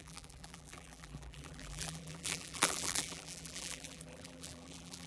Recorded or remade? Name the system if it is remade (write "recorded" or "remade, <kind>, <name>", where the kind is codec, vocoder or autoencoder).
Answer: remade, vocoder, BigVGAN v2